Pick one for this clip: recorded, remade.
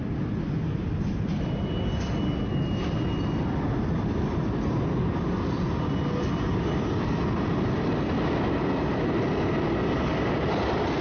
recorded